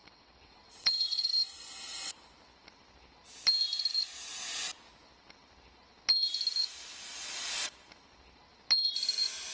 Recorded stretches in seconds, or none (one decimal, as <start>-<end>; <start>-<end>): 2.1-9.5